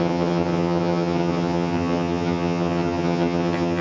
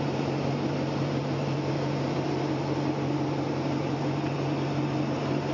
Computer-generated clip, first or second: first